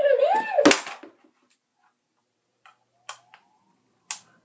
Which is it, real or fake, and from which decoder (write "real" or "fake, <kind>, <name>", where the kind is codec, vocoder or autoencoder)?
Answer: real